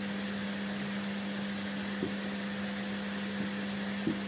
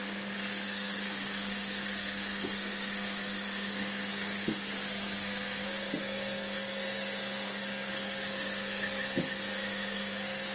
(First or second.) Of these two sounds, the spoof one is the second